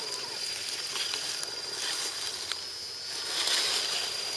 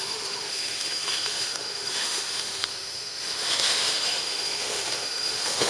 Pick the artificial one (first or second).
second